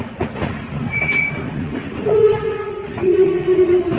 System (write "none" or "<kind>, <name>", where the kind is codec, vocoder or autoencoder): vocoder, Vocos